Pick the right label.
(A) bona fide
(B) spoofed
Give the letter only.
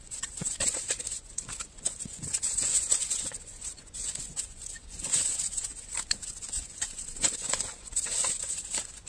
B